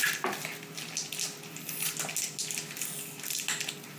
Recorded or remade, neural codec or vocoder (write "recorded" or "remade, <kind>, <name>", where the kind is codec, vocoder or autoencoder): recorded